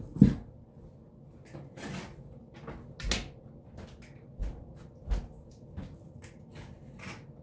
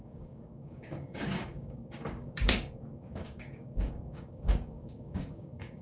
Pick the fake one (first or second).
second